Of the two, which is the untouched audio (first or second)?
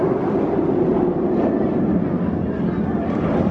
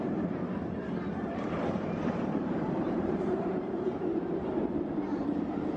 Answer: first